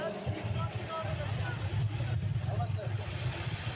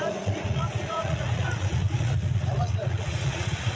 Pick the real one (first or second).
first